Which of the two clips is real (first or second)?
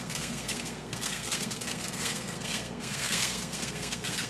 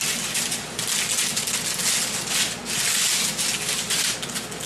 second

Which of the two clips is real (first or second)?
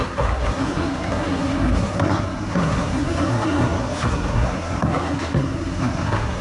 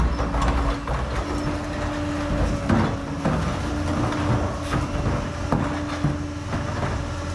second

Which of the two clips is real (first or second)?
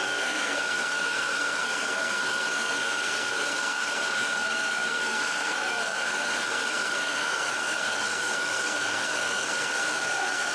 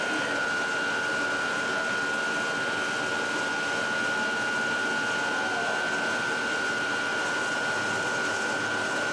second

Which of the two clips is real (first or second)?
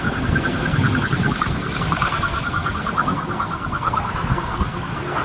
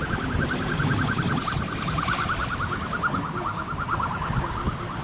second